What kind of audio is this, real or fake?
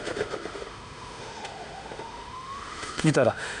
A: fake